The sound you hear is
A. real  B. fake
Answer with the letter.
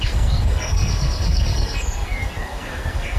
B